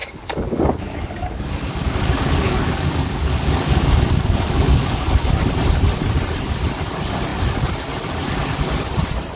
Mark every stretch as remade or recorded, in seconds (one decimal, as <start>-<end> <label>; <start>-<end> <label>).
0.0-5.3 remade; 5.3-9.4 recorded